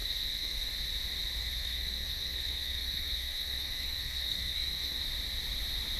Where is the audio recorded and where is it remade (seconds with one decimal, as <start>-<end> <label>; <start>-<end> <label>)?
0.0-0.7 remade; 0.7-1.4 recorded; 1.4-5.0 remade; 5.0-6.0 recorded